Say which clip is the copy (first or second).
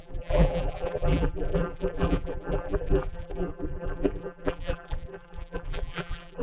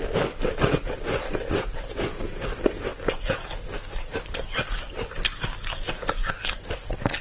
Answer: first